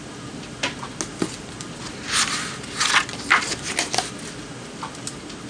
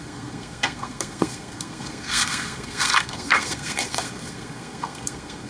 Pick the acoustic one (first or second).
first